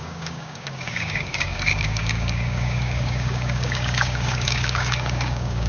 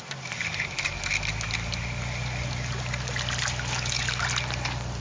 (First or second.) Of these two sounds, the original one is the second